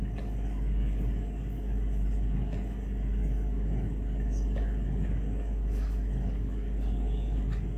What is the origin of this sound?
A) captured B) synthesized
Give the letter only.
B